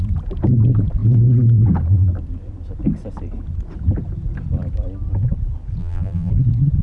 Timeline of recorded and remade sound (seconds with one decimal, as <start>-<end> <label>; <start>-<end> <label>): 0.0-5.8 recorded; 5.8-6.3 remade; 6.3-6.8 recorded